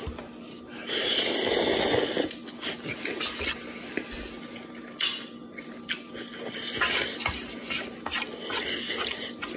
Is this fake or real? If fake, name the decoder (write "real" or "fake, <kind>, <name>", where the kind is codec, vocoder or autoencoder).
real